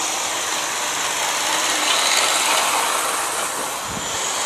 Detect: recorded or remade recorded